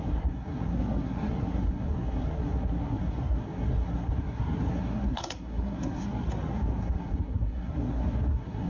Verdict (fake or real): fake